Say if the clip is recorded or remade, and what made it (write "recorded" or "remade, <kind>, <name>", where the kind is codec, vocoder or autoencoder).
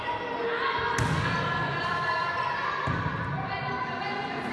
recorded